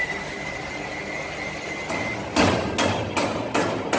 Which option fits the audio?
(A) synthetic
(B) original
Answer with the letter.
B